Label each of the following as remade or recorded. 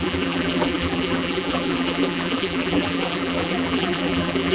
remade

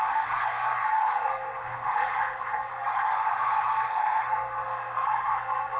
remade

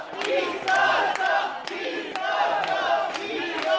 recorded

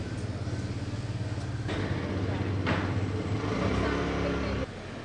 recorded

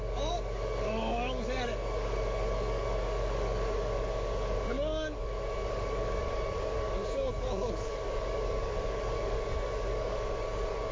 remade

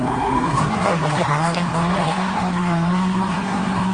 remade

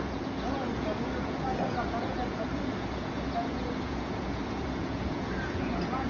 remade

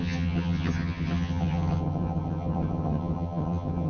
remade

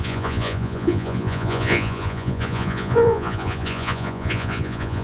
remade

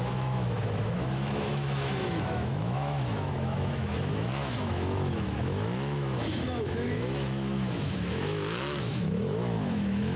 remade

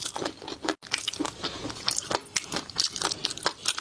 recorded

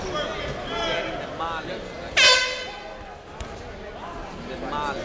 recorded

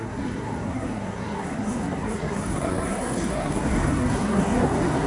remade